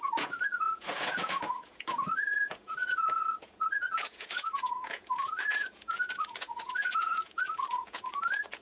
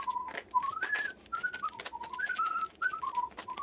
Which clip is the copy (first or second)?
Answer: first